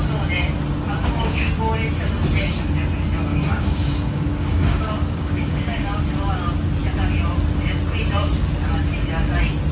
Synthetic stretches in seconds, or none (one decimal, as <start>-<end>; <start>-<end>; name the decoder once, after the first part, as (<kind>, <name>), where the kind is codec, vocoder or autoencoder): 1.0-1.5 (codec, DAC); 3.3-6.0